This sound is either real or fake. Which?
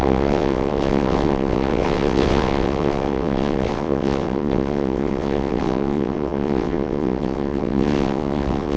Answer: fake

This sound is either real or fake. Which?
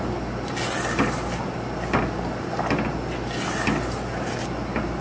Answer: real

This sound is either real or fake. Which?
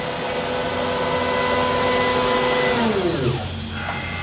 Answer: real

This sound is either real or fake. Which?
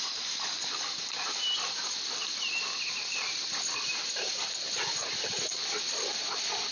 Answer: real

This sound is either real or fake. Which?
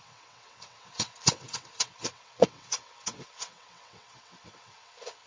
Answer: fake